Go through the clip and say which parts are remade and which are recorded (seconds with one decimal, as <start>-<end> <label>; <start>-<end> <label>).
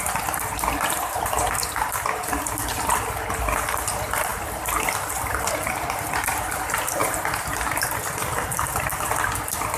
0.0-4.3 recorded; 4.3-5.5 remade; 5.5-9.8 recorded